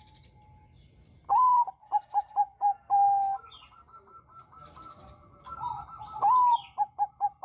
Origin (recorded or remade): recorded